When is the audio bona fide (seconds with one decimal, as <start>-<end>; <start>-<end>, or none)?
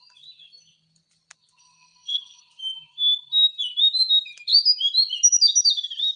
0.0-1.6; 2.4-6.2